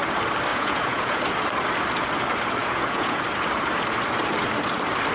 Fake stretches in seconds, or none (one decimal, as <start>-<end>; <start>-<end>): 0.5-1.2; 2.6-3.2